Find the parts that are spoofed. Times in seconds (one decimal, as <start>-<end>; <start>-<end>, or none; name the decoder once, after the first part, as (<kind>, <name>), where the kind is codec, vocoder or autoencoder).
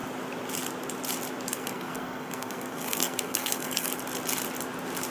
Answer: 1.5-3.9 (codec, SNAC)